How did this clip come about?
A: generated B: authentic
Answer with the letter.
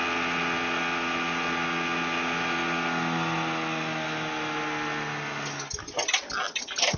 B